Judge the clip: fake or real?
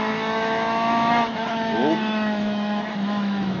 fake